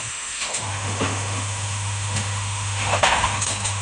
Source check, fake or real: fake